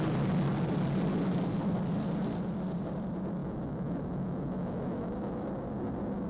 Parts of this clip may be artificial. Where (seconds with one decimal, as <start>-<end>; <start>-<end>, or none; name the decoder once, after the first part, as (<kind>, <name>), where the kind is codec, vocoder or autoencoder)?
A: 3.4-5.5 (autoencoder, DAC-VAE)